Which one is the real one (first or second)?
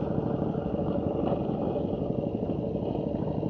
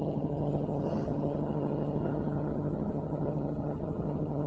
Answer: first